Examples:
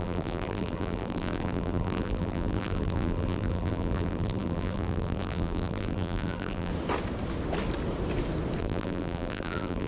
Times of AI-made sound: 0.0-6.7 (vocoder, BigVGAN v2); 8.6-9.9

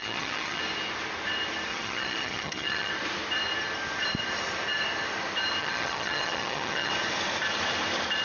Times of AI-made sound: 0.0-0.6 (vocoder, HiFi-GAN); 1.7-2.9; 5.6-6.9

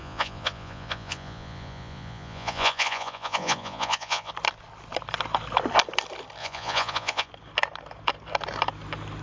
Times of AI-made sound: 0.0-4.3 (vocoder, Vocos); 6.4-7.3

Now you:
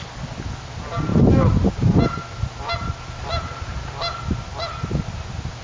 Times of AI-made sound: none

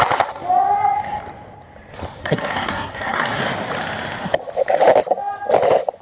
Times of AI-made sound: 2.2-3.4 (codec, SNAC)